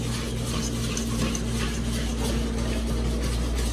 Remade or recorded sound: recorded